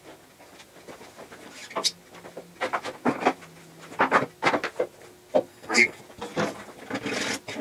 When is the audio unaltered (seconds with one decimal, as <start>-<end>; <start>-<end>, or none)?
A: 0.0-5.5; 6.0-7.6